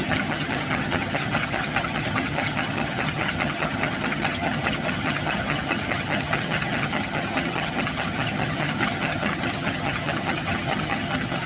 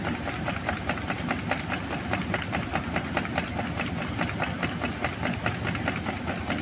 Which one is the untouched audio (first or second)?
second